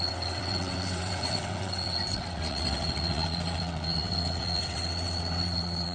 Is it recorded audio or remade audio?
remade